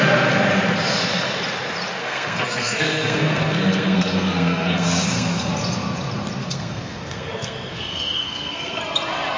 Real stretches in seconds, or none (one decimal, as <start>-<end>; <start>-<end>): 0.0-2.0; 5.5-6.4; 8.8-9.4